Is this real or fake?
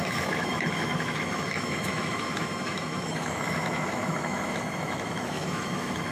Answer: fake